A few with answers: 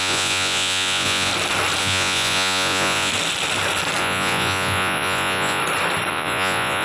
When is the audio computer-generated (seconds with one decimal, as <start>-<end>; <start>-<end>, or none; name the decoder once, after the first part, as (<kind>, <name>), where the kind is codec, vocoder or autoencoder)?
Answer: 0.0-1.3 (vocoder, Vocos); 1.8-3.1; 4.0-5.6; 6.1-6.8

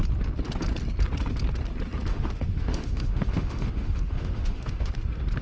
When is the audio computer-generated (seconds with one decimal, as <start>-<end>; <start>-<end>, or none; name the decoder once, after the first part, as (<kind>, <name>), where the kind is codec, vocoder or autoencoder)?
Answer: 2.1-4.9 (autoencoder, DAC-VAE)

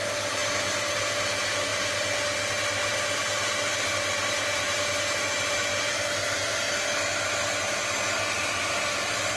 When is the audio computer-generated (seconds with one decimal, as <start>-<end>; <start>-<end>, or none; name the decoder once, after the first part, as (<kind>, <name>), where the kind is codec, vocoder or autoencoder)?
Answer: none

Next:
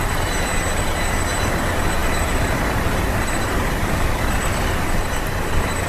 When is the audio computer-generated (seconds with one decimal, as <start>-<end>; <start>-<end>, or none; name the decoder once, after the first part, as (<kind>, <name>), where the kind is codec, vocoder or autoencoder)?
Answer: 0.0-0.5 (vocoder, BigVGAN v2); 1.0-5.9

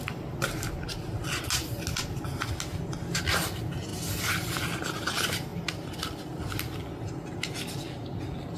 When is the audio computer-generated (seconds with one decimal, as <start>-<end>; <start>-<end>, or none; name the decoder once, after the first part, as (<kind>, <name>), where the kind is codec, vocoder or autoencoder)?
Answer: none

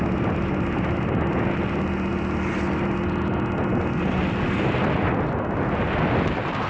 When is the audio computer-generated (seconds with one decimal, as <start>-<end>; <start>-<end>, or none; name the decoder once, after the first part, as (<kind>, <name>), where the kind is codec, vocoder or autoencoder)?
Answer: none